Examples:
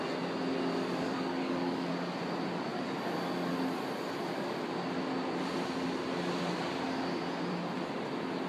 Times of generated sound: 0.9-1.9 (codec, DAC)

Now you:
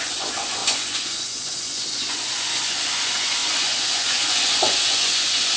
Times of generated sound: 0.0-5.6 (vocoder, Vocos)

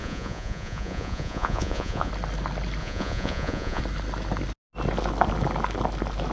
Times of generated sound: 0.0-2.1 (vocoder, Vocos); 2.8-3.8